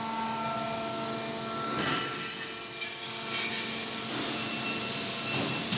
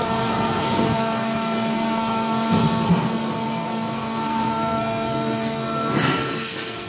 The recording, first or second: first